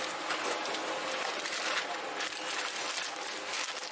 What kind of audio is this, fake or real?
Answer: real